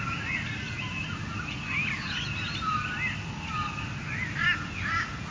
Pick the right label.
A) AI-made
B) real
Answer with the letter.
B